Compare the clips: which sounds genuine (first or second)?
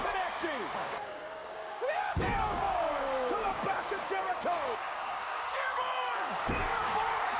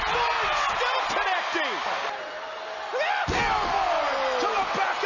second